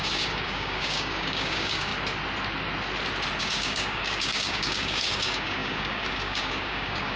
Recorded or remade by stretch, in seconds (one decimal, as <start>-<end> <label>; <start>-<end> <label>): 0.0-1.9 remade; 1.9-3.4 recorded; 3.4-7.2 remade